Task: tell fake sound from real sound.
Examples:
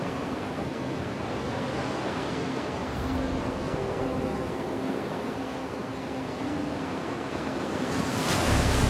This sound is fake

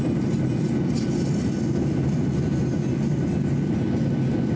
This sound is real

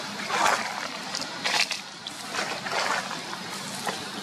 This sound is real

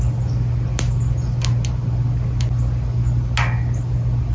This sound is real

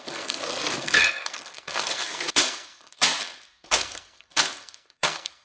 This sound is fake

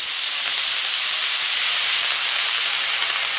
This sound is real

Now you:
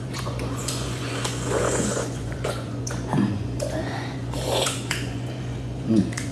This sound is fake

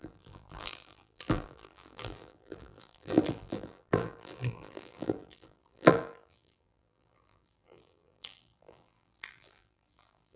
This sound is fake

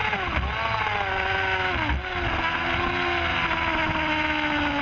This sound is real